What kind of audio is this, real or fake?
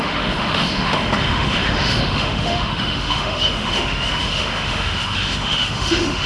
fake